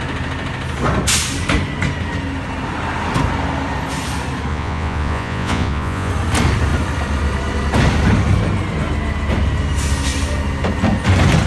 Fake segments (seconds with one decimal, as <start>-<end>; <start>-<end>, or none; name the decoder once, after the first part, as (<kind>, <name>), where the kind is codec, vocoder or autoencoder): 4.5-6.1 (vocoder, Vocos)